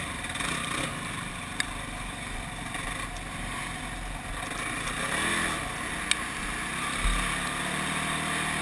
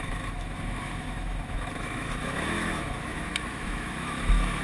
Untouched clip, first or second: first